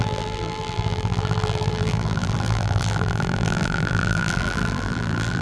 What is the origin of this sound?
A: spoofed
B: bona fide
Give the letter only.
A